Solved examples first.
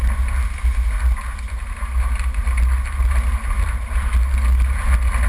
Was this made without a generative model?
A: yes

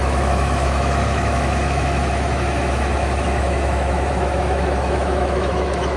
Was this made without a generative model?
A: no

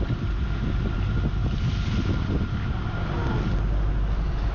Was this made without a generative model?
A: yes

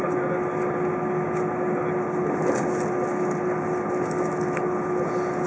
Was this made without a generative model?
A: yes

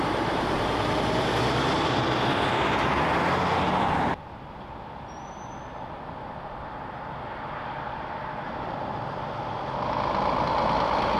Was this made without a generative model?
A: yes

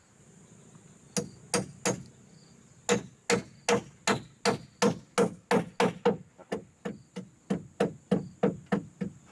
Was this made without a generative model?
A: yes